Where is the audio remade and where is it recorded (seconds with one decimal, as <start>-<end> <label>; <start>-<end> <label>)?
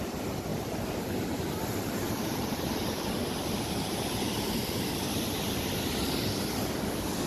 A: 0.0-0.5 recorded; 0.5-4.9 remade; 4.9-7.3 recorded